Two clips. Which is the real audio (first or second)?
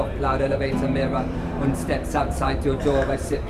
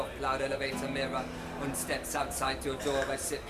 second